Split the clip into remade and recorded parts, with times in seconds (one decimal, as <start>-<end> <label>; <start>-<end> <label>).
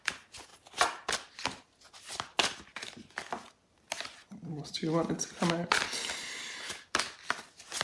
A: 0.0-7.8 recorded